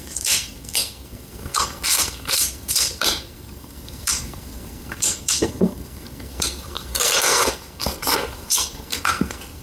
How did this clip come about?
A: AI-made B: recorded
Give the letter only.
A